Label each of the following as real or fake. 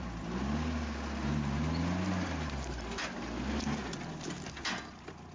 real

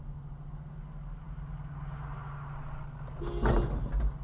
real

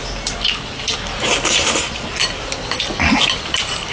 real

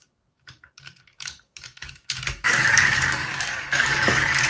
fake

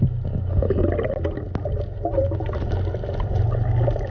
real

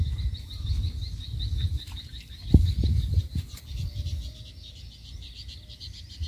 real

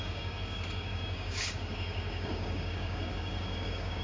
fake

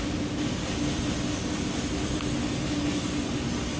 real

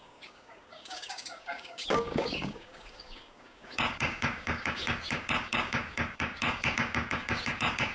fake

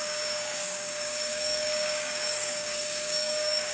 fake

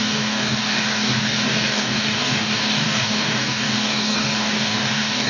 fake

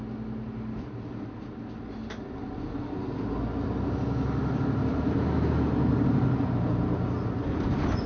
real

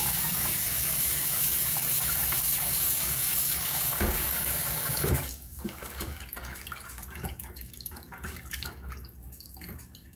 fake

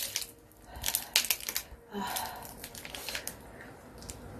real